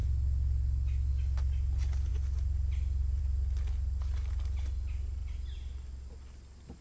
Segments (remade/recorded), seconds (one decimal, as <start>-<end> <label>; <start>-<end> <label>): 0.0-6.8 recorded

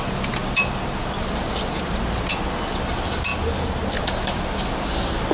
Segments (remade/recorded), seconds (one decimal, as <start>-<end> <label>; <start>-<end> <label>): 0.0-5.3 recorded

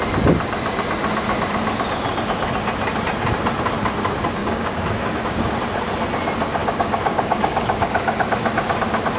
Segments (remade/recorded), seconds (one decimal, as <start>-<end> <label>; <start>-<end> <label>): 0.0-4.4 recorded; 4.4-5.5 remade; 5.5-6.6 recorded; 6.6-8.3 remade; 8.3-9.2 recorded

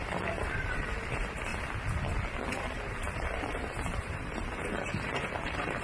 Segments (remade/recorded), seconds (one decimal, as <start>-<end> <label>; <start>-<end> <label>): 0.0-1.5 remade; 1.5-2.5 recorded; 2.5-5.8 remade

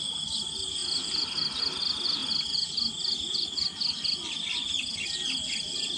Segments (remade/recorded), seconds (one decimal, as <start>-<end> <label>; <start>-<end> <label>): 0.0-6.0 recorded